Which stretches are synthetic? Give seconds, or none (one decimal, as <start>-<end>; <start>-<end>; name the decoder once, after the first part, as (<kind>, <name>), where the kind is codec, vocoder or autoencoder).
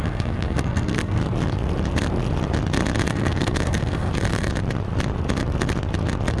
0.0-1.2 (codec, SNAC); 3.1-4.1